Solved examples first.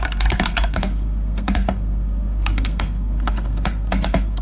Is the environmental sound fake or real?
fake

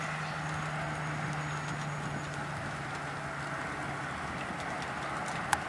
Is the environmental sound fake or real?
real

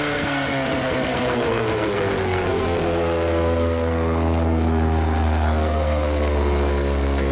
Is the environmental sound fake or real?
fake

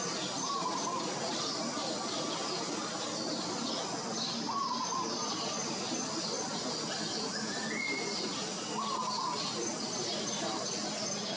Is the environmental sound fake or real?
real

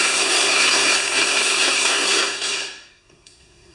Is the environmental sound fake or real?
fake